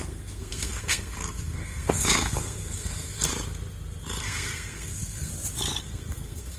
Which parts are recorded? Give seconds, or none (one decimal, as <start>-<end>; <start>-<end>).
3.3-4.2; 5.3-5.8